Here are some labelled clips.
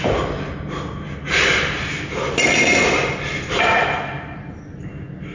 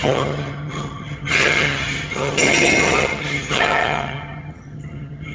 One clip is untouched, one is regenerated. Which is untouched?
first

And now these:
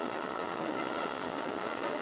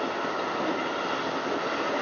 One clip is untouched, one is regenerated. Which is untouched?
second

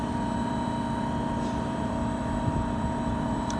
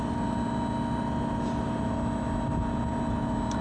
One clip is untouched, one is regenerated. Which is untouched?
second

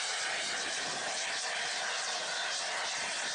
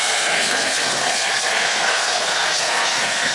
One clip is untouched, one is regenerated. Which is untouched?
first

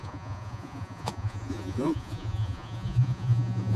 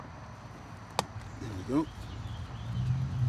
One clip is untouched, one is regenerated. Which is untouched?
second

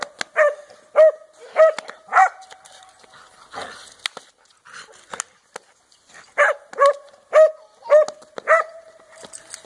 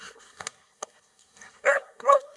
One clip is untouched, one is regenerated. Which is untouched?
first